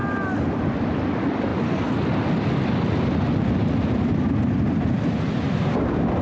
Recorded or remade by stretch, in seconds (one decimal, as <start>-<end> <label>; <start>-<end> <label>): 0.0-6.2 recorded